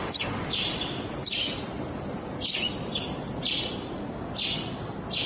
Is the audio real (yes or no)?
yes